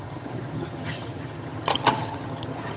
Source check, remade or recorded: remade